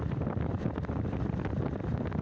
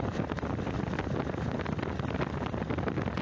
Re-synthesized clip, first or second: first